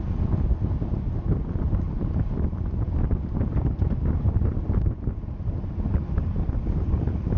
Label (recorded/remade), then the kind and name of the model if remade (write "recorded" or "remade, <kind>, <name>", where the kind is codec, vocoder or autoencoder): remade, vocoder, BigVGAN v2